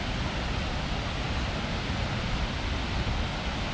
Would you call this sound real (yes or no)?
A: yes